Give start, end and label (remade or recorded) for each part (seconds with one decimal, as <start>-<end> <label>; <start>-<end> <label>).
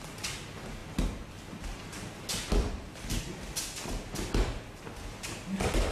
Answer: 0.0-0.8 recorded; 0.8-4.3 remade; 4.3-5.9 recorded